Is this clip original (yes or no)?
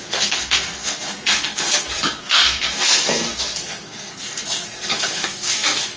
no